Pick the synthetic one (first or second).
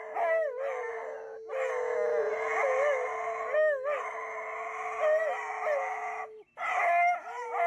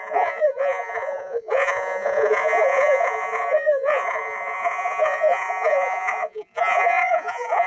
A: second